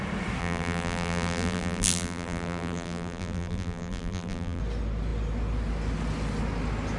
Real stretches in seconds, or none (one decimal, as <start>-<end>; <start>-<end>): 0.0-0.4; 4.6-7.0